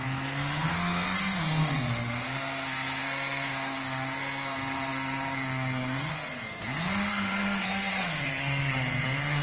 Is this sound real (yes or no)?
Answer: no